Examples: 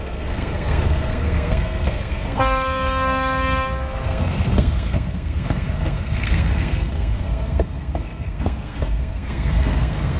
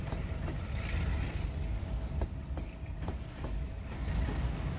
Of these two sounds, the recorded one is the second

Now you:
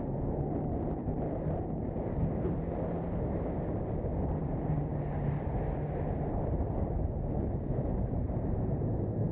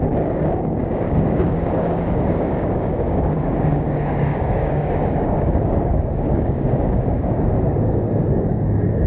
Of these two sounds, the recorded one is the first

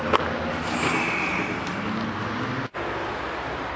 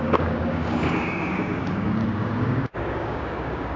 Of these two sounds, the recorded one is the first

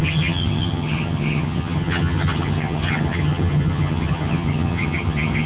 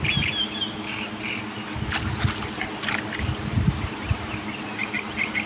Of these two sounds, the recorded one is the second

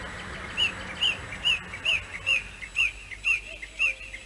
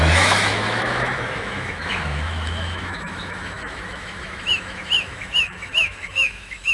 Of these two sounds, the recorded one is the first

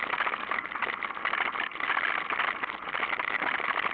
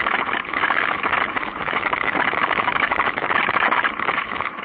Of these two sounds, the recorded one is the first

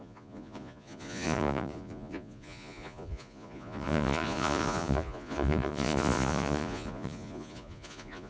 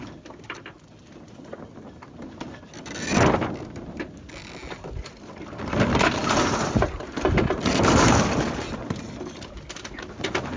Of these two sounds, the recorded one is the second